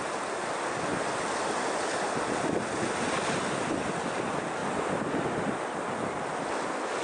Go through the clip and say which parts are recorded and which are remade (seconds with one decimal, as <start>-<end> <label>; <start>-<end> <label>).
0.0-4.6 recorded; 4.6-6.3 remade; 6.3-7.0 recorded